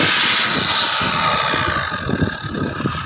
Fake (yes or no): no